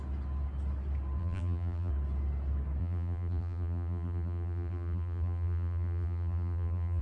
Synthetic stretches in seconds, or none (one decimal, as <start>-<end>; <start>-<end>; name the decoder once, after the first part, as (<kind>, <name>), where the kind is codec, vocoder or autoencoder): 1.2-1.9 (vocoder, BigVGAN v2); 2.8-7.0